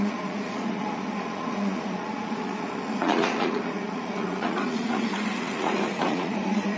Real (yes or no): no